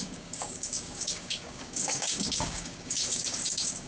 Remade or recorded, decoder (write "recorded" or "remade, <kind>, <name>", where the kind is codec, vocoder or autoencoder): remade, codec, DAC